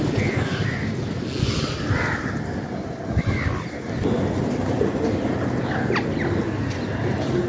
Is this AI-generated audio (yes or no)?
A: no